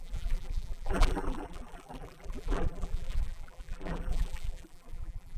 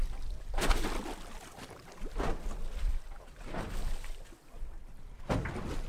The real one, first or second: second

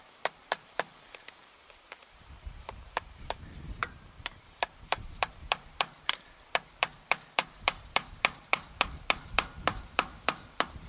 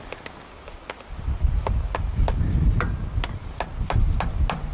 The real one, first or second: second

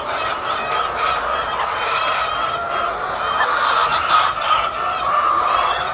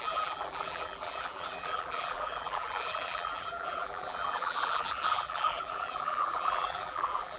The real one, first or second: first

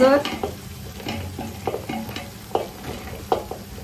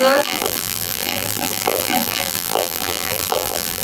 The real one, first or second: first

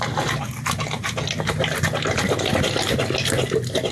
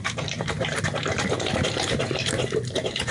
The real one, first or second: first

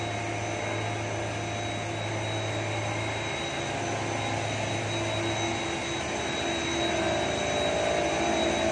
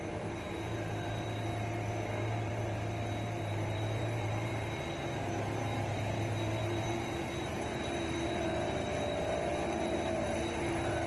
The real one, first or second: first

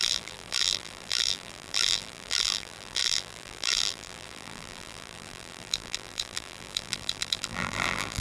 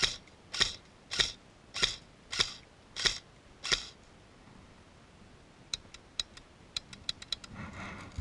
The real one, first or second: second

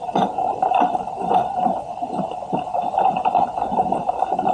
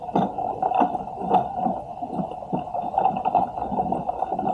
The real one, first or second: second